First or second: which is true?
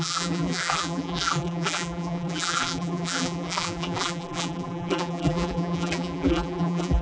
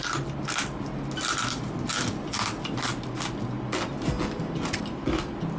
second